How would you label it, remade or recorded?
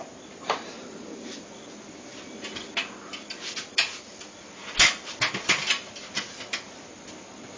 recorded